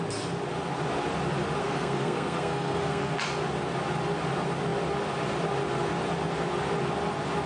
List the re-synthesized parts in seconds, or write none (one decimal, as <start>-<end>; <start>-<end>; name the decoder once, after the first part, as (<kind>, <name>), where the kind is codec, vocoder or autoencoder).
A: 1.6-3.2 (codec, SNAC)